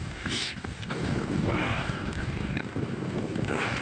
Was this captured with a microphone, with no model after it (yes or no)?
no